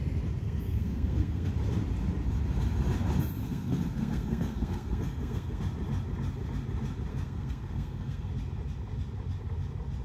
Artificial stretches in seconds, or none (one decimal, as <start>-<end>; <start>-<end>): 0.4-1.5; 3.4-5.6; 7.1-8.3